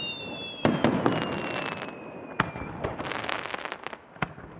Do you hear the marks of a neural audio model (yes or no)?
no